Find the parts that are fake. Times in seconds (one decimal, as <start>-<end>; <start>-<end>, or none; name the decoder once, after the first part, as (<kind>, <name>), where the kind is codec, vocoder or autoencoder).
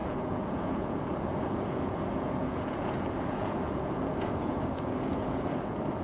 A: 0.0-6.0 (vocoder, Vocos)